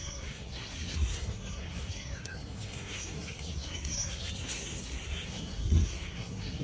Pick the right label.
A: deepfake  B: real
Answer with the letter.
A